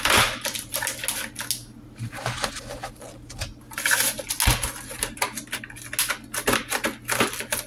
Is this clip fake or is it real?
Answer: real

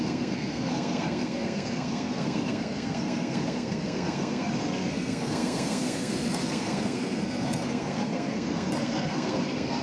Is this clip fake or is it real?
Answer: fake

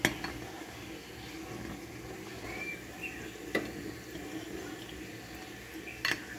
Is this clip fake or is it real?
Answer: real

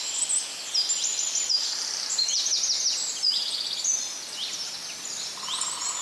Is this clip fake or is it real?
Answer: real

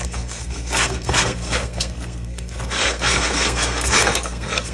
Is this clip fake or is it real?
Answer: fake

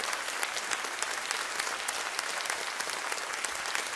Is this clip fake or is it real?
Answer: real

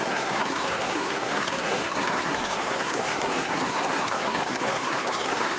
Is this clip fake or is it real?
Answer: fake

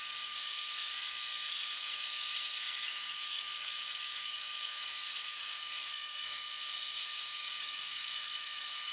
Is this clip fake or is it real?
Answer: fake